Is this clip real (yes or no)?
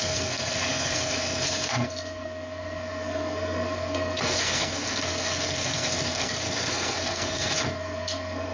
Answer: no